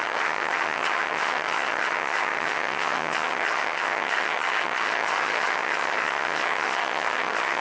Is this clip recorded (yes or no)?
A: no